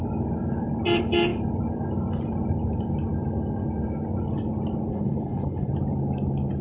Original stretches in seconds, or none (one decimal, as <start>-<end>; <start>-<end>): 0.0-4.9; 5.7-6.6